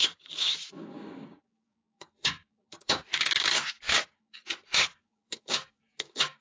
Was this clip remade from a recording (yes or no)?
yes